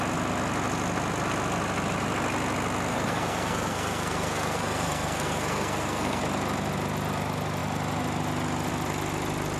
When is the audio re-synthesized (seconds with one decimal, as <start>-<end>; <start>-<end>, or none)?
2.9-6.2